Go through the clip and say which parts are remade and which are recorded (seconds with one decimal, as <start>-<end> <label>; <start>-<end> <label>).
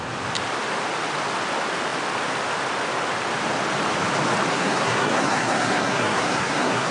0.0-4.5 recorded; 4.5-6.9 remade